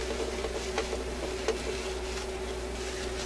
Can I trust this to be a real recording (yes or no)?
yes